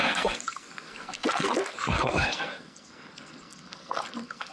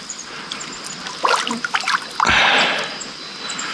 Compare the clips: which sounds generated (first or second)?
first